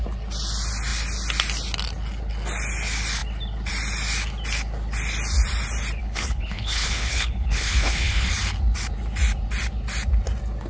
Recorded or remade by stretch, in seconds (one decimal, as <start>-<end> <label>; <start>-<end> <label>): 0.0-6.0 recorded; 6.0-8.3 remade; 8.3-10.7 recorded